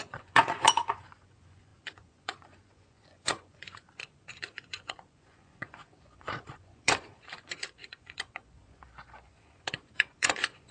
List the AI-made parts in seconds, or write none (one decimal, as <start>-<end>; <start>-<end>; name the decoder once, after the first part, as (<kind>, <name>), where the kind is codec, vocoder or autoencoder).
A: 0.0-10.7 (vocoder, Vocos)